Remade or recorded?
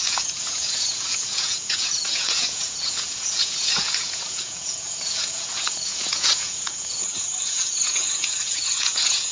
remade